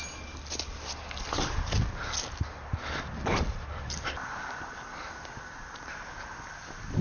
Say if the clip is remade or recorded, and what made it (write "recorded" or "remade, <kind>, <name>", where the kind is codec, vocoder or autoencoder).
recorded